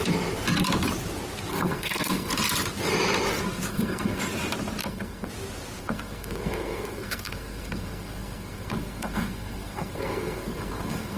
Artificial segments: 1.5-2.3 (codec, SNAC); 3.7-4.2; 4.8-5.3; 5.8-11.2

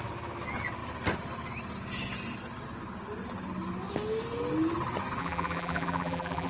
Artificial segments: 5.2-6.5 (vocoder, BigVGAN v2)

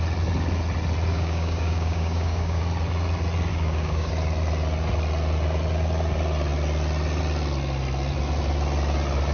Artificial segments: 1.1-2.6 (codec, DAC); 3.5-4.1

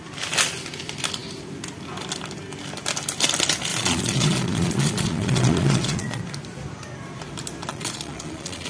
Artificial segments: 3.7-6.2 (vocoder, Vocos); 7.7-8.7

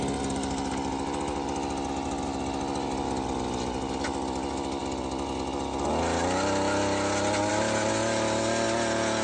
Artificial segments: none

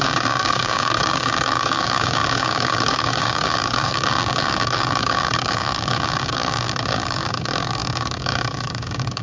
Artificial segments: 0.0-9.2 (codec, DAC)